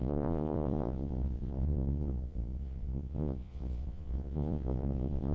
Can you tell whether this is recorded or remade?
remade